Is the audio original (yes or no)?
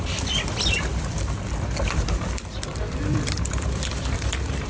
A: no